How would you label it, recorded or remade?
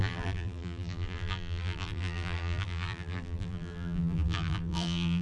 remade